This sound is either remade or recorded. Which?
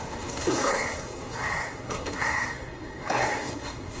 remade